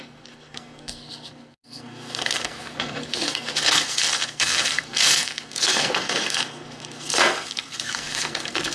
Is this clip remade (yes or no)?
yes